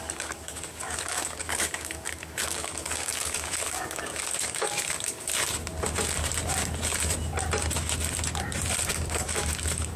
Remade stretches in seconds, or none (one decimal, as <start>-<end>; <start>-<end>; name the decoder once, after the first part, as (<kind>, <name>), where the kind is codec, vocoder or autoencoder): 0.0-5.3 (codec, DAC); 8.9-10.0